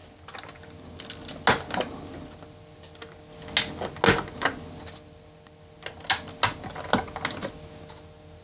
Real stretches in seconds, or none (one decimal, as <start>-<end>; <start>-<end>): 0.0-8.4

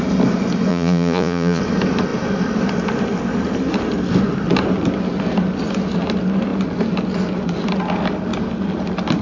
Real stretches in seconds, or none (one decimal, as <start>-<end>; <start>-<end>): 0.0-0.7; 1.6-9.2

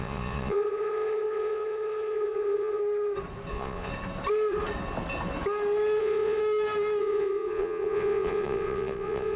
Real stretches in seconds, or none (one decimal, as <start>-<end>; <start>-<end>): 2.8-3.5; 3.9-6.0; 6.4-7.0